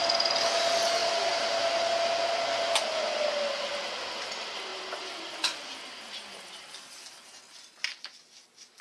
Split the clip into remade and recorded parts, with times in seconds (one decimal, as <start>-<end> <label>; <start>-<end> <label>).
0.0-8.8 recorded

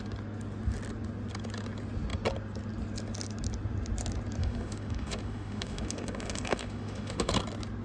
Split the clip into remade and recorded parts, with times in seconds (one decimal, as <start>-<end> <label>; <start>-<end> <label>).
0.0-4.4 recorded; 4.4-7.3 remade; 7.3-7.8 recorded

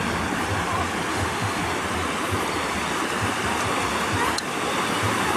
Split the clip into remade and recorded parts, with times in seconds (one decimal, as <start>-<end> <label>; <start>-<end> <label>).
0.0-1.1 recorded; 1.1-1.6 remade; 1.6-5.4 recorded

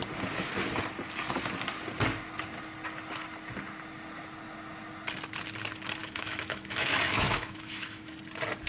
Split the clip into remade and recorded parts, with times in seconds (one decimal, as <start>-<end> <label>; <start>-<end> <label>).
0.0-6.0 recorded; 6.0-8.1 remade; 8.1-8.7 recorded

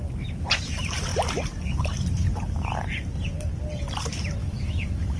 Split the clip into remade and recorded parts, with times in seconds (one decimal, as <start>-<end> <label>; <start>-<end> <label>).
0.0-4.4 recorded; 4.4-5.2 remade